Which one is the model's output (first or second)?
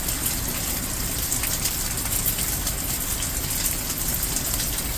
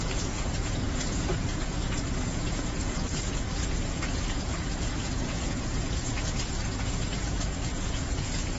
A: second